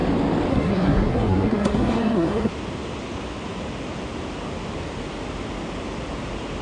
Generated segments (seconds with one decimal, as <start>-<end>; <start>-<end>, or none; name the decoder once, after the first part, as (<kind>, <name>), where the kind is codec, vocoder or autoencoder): 0.5-2.5 (codec, SNAC)